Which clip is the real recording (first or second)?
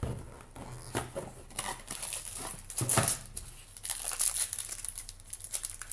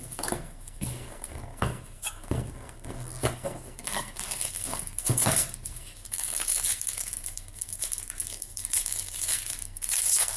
first